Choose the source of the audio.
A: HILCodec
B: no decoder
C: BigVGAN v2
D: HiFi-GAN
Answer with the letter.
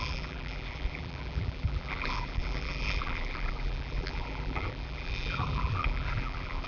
C